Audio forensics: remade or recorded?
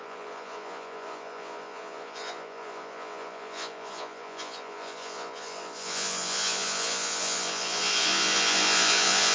remade